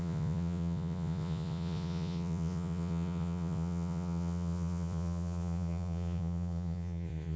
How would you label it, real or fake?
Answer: fake